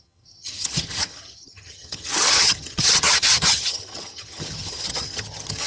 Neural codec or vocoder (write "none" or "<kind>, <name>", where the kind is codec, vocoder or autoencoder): vocoder, HiFi-GAN